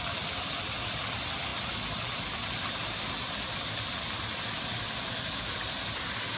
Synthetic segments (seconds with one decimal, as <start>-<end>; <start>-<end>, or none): none